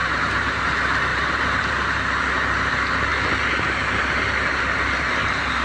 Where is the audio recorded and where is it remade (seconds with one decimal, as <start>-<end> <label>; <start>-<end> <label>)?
0.0-0.6 remade; 0.6-1.1 recorded; 1.1-1.8 remade; 1.8-5.6 recorded